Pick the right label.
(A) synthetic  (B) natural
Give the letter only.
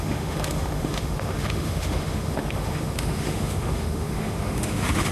A